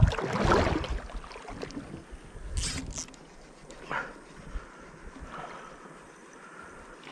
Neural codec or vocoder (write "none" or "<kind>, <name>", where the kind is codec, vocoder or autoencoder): none